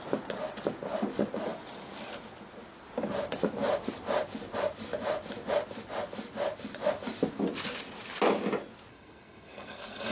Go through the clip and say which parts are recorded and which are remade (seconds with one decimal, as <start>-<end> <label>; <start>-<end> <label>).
0.0-8.9 recorded; 8.9-10.1 remade